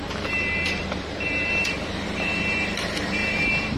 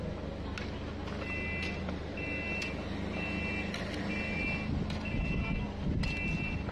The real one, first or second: second